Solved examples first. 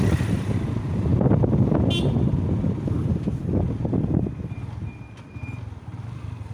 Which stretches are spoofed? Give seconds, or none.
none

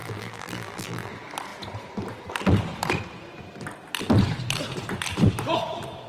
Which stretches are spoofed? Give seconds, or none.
0.0-1.1

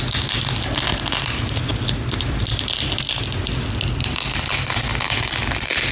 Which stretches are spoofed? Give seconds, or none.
1.7-4.7